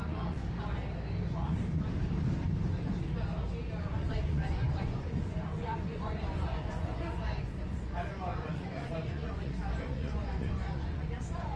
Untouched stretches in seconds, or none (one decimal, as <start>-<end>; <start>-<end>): 0.4-3.8